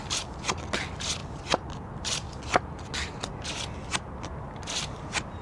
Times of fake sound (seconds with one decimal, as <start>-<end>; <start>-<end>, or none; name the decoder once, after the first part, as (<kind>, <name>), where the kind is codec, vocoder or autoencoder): none